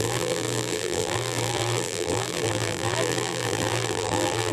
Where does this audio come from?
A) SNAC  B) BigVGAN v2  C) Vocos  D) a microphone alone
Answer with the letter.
B